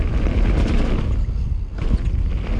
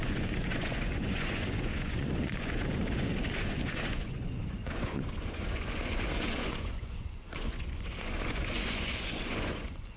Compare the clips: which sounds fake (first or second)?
second